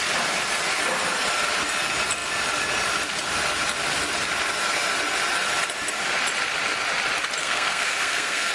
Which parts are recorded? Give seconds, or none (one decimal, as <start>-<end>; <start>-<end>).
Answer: 0.0-7.4